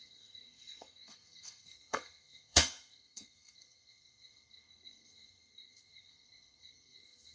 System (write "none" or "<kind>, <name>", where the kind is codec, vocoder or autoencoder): codec, SNAC